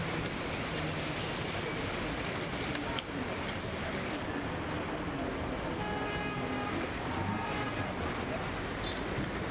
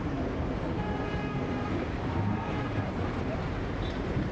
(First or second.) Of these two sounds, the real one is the first